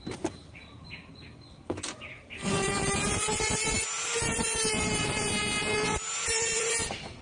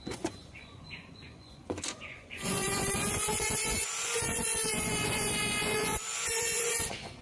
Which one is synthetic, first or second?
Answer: second